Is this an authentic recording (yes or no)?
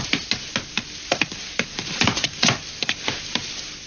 yes